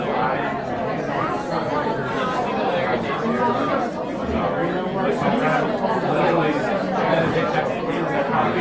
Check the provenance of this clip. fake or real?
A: real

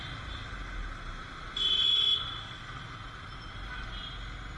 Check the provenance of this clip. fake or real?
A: real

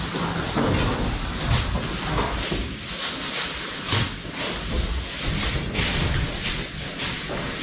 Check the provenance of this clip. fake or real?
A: real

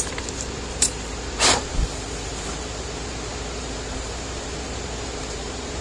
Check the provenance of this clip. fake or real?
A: fake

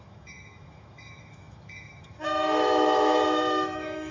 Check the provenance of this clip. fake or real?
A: fake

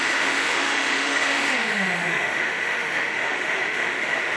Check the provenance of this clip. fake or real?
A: fake